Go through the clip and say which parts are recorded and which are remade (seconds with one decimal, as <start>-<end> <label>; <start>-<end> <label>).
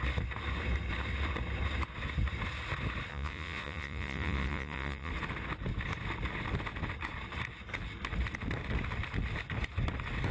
0.0-3.1 recorded; 3.1-5.1 remade; 5.1-10.3 recorded